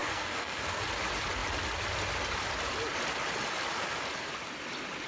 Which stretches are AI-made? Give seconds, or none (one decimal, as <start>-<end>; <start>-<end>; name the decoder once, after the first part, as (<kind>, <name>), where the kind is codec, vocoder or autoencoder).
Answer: 0.0-0.8 (codec, SNAC)